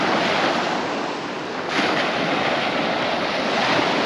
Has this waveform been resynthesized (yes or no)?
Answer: no